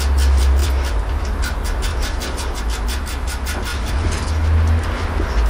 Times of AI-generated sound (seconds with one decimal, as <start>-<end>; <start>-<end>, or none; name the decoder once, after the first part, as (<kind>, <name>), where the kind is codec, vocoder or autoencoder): 0.6-1.2 (vocoder, BigVGAN v2); 1.9-2.6; 3.7-4.3